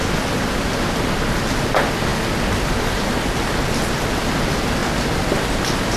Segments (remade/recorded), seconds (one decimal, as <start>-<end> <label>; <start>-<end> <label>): 0.0-6.0 recorded